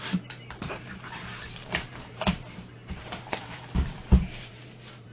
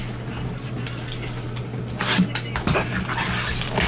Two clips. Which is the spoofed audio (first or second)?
first